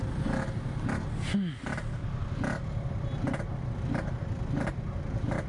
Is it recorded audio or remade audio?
recorded